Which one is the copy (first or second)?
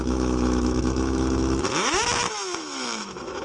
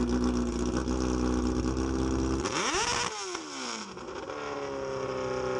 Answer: first